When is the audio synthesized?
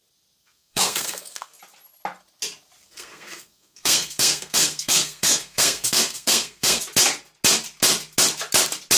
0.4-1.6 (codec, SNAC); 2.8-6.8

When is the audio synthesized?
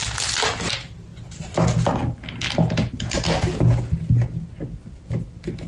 none